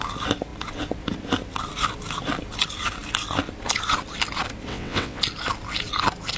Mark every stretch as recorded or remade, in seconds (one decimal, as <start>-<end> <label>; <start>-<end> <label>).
0.0-4.7 recorded; 4.7-5.2 remade; 5.2-6.4 recorded

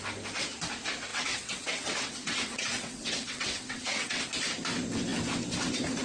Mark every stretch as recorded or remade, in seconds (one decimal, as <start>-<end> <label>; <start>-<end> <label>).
0.0-1.1 recorded; 1.1-4.3 remade; 4.3-6.0 recorded

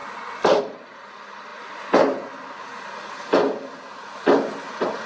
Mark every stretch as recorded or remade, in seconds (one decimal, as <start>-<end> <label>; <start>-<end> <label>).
0.0-5.1 recorded

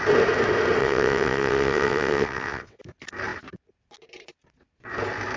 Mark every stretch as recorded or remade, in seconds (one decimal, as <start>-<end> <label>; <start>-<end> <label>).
0.0-0.8 recorded; 0.8-2.8 remade; 2.8-5.4 recorded

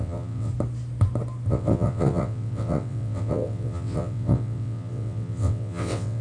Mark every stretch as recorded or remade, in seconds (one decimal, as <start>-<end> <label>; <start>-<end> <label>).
0.0-0.5 remade; 0.5-1.5 recorded; 1.5-6.2 remade